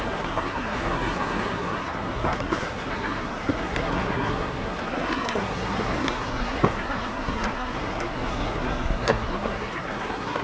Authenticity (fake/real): fake